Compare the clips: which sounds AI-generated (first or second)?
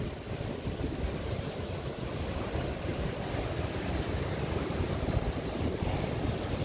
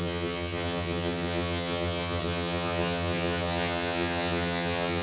second